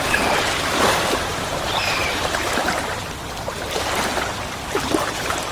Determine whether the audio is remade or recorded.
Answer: remade